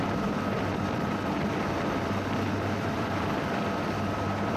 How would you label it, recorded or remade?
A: remade